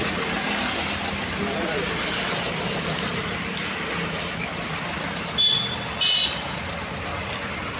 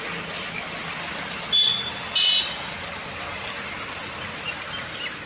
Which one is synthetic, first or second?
first